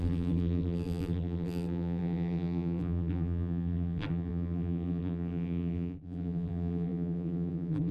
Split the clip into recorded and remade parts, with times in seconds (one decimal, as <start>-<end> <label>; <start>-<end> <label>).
0.0-7.9 remade